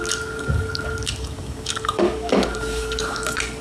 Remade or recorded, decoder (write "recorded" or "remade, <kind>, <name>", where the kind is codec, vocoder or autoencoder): remade, codec, DAC